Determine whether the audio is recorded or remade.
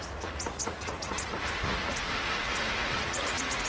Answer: remade